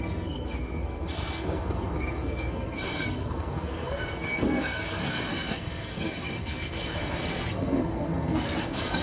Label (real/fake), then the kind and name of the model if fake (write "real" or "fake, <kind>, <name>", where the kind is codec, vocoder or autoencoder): fake, codec, SNAC